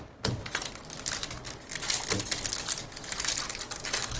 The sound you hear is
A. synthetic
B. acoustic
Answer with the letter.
B